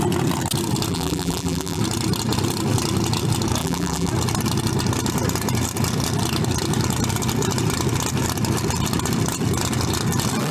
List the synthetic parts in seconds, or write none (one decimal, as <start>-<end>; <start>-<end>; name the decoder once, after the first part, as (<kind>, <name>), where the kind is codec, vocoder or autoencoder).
0.9-1.8 (vocoder, BigVGAN v2); 3.6-4.1